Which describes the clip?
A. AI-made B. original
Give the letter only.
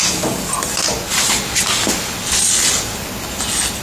B